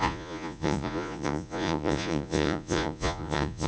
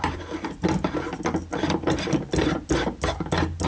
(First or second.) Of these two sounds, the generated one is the first